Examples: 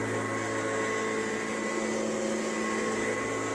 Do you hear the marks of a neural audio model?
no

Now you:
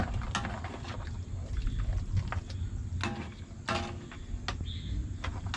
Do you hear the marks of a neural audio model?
no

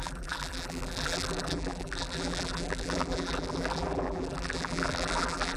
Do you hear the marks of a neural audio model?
yes